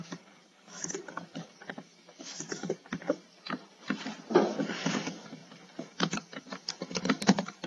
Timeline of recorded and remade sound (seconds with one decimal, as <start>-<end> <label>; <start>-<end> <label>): 0.0-3.2 remade; 3.2-4.3 recorded; 4.3-7.7 remade